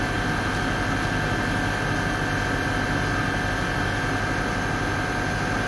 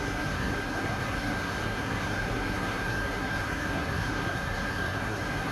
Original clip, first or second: first